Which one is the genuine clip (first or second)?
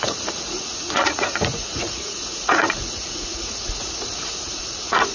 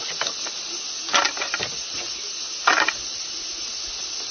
second